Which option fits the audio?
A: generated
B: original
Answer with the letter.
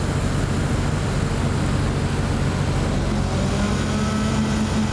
B